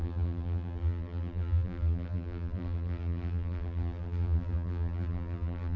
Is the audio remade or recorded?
remade